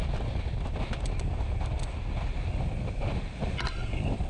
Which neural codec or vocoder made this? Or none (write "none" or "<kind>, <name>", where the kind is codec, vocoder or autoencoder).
none